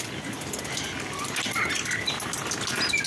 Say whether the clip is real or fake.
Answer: real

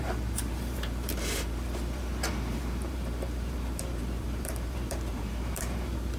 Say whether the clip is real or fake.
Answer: fake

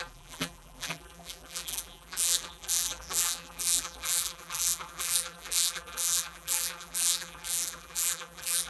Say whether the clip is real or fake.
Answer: fake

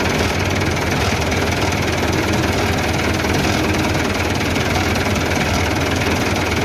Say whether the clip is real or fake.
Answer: real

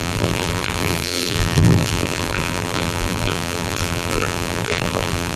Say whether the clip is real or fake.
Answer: fake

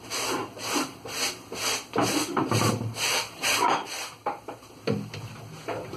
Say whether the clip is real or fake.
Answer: fake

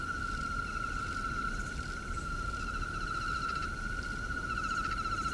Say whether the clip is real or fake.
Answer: real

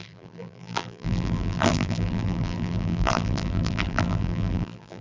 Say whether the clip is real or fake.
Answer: fake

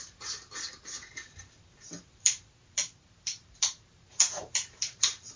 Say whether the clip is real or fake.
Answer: fake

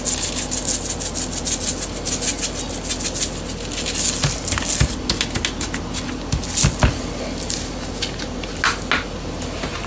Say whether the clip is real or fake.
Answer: real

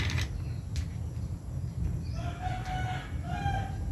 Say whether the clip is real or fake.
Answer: real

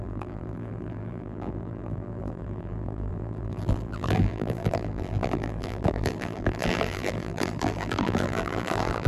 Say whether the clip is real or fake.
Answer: fake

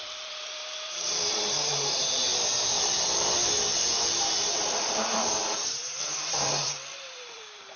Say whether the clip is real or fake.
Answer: fake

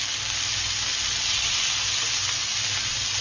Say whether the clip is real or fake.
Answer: real